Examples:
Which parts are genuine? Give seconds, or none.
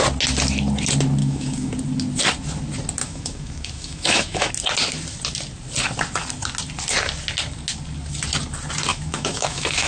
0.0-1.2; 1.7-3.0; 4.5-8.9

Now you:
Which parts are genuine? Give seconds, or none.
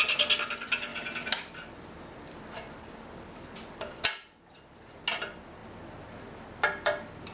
0.0-7.3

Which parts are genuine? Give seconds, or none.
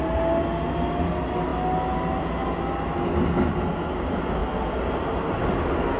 0.0-6.0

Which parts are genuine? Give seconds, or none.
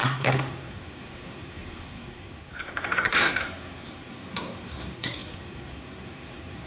none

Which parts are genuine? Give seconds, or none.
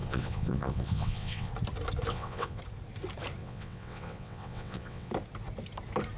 1.5-2.1; 2.6-3.4; 5.1-6.2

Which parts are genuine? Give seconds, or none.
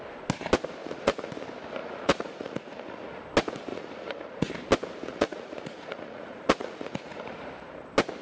0.0-0.8; 1.3-1.8; 3.2-3.7; 4.5-5.1; 7.3-8.2